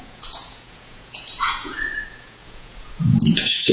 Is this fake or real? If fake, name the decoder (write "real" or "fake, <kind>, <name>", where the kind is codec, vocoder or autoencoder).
fake, vocoder, Vocos